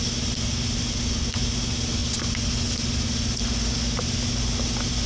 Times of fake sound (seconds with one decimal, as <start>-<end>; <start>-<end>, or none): none